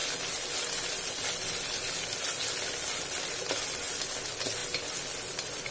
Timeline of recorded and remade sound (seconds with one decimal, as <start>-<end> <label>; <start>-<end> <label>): 0.0-5.7 recorded